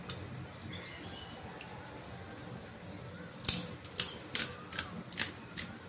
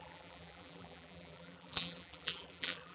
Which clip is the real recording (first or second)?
first